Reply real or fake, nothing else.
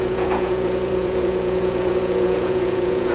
fake